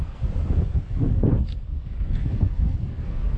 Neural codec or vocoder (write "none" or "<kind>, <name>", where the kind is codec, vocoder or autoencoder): codec, SNAC